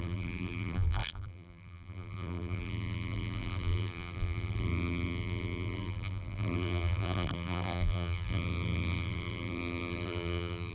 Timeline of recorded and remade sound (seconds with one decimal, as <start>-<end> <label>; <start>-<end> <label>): 0.0-10.7 remade